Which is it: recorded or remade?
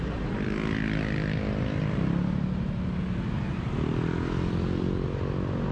recorded